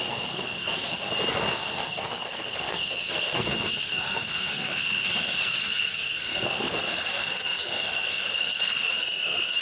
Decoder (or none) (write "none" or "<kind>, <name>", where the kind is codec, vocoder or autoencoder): codec, SNAC